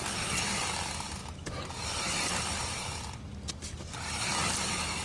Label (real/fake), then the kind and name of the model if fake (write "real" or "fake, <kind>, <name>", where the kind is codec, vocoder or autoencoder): real